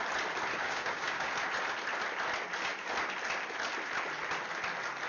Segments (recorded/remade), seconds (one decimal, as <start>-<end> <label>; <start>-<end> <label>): 0.0-0.6 recorded; 0.6-1.3 remade; 1.3-5.1 recorded